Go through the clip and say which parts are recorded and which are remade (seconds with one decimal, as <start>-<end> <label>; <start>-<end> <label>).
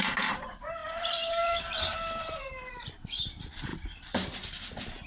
0.0-3.7 remade; 3.7-5.1 recorded